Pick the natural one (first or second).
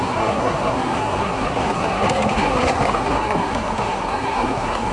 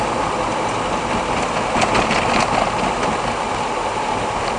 second